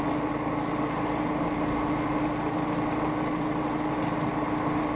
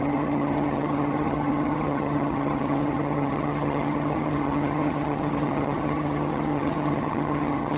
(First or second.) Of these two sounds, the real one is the first